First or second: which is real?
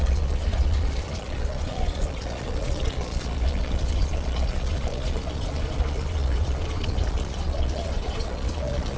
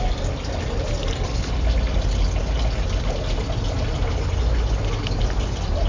second